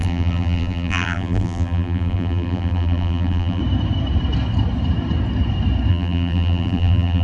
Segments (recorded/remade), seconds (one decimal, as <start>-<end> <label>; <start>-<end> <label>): 0.0-3.6 remade; 3.6-5.9 recorded; 5.9-7.2 remade